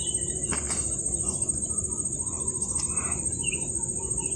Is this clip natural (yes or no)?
no